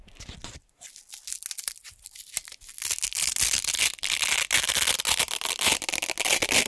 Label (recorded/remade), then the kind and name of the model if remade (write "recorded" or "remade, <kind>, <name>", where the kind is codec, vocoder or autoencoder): recorded